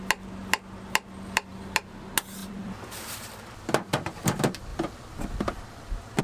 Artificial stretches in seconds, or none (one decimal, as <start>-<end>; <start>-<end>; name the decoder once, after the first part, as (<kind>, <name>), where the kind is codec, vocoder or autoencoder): 2.4-3.5 (vocoder, BigVGAN v2); 4.7-6.2